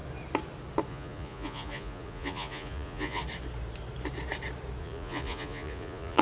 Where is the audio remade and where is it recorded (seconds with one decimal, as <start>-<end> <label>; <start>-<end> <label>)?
0.0-0.9 recorded; 0.9-3.2 remade; 3.2-4.8 recorded; 4.8-6.2 remade